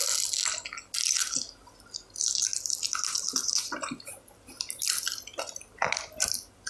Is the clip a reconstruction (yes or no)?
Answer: no